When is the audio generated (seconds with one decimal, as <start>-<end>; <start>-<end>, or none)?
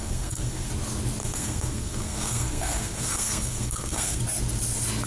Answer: 0.0-0.7; 1.2-4.2